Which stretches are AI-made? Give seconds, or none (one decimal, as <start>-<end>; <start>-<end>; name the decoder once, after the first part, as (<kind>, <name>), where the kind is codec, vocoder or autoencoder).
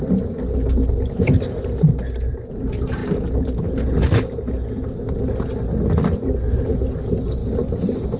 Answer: none